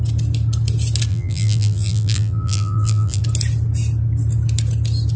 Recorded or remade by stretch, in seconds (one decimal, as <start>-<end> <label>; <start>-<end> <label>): 0.0-1.1 recorded; 1.1-3.2 remade; 3.2-5.2 recorded